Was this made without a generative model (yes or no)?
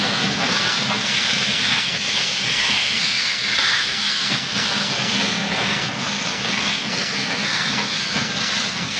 no